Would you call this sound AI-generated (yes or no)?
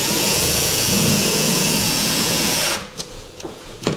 yes